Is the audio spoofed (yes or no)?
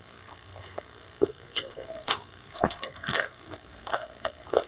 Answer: yes